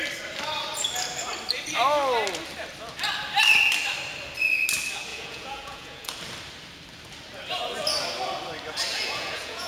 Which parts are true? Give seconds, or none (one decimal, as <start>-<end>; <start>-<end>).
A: 0.0-5.1; 6.1-8.9